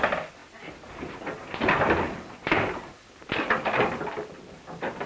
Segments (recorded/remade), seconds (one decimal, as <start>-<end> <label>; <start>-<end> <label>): 0.0-5.1 recorded